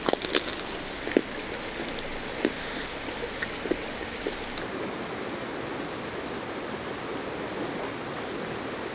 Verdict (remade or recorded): recorded